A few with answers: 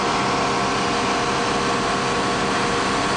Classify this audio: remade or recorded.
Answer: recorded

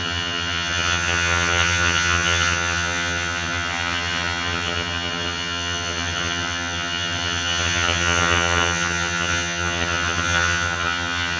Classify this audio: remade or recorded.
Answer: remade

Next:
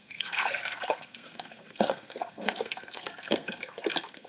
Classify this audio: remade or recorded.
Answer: remade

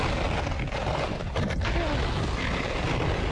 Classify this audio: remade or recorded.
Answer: recorded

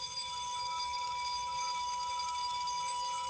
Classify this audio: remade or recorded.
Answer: remade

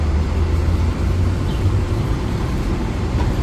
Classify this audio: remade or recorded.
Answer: recorded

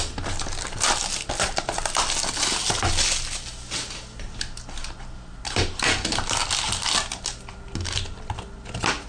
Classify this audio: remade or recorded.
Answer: recorded